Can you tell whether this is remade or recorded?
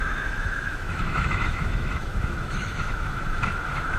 remade